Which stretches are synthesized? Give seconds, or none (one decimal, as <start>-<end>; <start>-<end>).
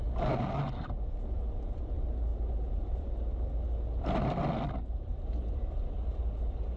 none